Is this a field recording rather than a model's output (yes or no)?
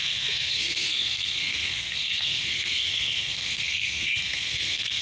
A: no